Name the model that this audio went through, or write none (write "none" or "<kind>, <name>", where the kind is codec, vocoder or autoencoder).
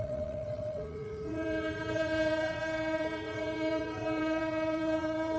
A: vocoder, WaveNeXt